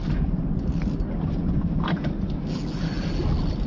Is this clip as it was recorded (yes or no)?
yes